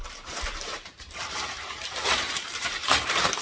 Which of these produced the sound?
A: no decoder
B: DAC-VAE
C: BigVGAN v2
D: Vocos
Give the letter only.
C